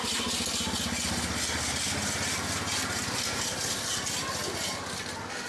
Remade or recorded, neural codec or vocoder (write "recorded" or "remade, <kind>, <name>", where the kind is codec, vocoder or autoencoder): recorded